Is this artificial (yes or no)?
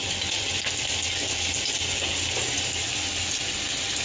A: no